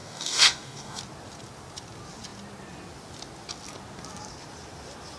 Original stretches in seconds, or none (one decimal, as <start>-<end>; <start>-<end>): 1.0-5.2